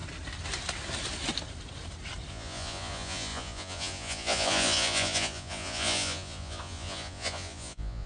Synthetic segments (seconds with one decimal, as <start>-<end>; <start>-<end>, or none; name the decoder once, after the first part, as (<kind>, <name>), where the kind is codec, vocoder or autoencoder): 2.3-8.1 (vocoder, Vocos)